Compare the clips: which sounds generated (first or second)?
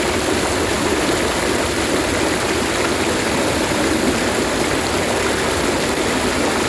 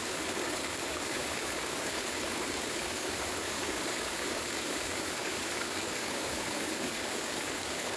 second